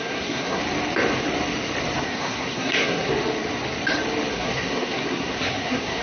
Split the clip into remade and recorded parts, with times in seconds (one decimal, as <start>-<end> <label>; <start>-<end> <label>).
0.0-0.6 remade; 0.6-2.0 recorded; 2.0-3.1 remade; 3.1-4.3 recorded; 4.3-6.0 remade